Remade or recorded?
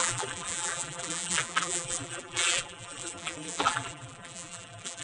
remade